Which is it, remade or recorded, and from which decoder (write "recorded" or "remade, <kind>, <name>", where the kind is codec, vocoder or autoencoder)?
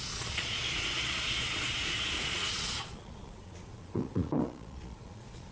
remade, vocoder, Vocos